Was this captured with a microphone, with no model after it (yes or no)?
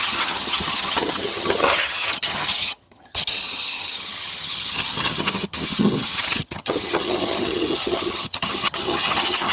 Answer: no